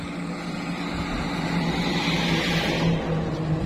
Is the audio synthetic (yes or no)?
no